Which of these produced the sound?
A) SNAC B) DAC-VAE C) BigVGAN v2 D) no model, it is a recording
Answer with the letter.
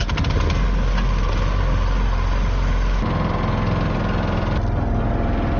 D